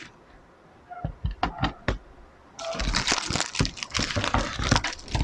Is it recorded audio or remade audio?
recorded